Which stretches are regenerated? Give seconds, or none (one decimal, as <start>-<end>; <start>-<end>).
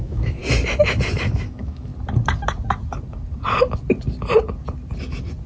0.0-0.4; 1.3-1.9